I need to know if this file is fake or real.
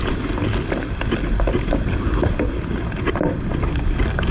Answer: real